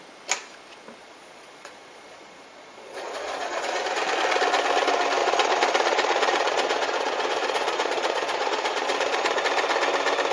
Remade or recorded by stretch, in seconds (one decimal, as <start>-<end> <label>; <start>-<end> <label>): 0.0-1.0 recorded; 1.0-3.8 remade; 3.8-5.2 recorded; 5.2-9.4 remade; 9.4-10.3 recorded